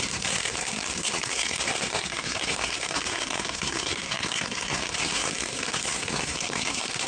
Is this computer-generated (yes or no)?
yes